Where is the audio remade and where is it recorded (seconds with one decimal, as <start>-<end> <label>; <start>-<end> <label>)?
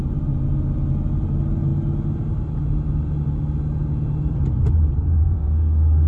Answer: 0.0-5.2 recorded; 5.2-6.1 remade